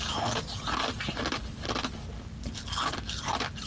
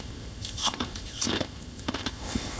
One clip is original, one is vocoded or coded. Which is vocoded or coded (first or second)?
second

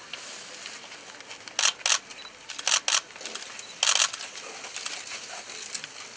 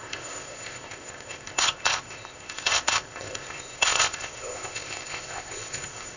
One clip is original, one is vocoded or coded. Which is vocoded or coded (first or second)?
second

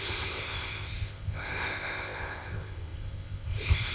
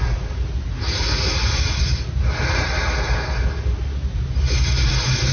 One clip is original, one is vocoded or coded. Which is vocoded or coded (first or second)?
first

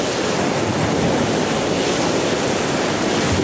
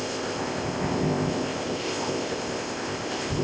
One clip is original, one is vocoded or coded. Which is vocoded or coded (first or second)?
second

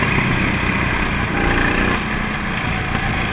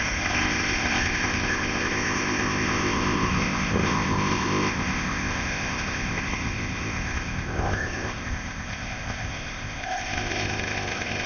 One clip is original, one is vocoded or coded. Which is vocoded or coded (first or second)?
second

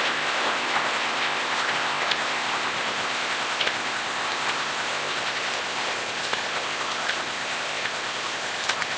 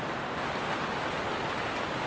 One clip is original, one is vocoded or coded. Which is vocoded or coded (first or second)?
first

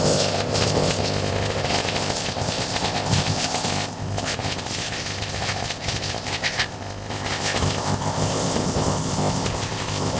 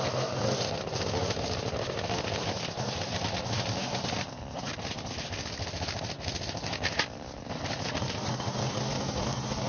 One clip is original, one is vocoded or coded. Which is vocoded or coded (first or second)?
first